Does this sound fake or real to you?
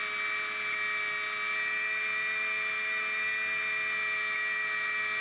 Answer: real